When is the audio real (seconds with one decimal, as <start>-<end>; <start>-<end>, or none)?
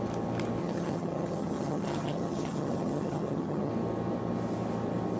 0.0-0.6; 3.7-5.2